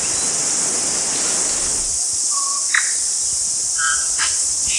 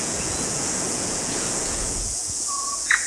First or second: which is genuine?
first